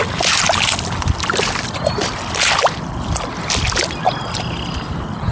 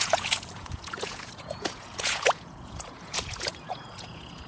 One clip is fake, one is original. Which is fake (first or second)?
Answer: second